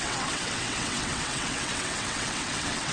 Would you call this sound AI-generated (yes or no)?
yes